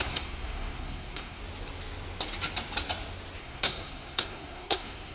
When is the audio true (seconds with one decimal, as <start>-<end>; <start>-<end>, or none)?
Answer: 1.4-3.4